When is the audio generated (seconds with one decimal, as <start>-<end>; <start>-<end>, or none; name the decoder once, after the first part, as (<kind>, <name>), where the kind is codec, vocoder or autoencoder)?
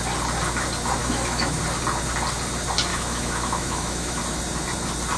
1.0-1.6 (autoencoder, DAC-VAE); 2.9-4.2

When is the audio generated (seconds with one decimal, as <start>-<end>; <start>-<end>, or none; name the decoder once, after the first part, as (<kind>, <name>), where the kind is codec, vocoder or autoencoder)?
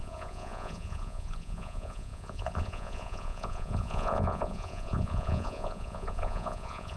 0.0-7.0 (vocoder, Vocos)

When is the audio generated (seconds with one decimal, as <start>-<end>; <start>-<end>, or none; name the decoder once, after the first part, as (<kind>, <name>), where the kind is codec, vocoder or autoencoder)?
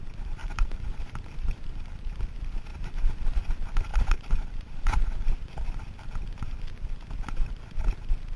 0.4-2.1 (vocoder, BigVGAN v2); 2.7-3.4; 3.9-5.5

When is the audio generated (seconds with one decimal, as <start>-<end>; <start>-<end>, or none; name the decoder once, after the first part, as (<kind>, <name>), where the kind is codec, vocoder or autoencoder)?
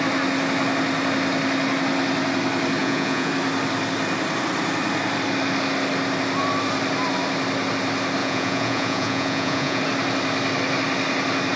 2.8-3.3 (vocoder, Vocos); 8.2-9.8